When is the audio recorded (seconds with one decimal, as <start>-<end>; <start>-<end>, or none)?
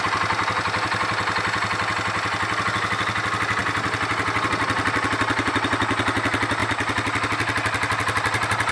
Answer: 0.0-6.6